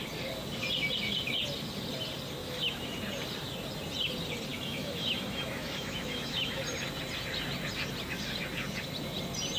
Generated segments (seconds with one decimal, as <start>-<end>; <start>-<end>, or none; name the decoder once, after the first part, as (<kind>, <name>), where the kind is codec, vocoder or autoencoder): 2.4-3.0 (autoencoder, DAC-VAE); 4.5-6.6